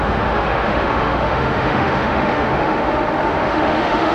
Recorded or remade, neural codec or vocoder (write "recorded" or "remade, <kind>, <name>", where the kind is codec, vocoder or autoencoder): remade, autoencoder, DAC-VAE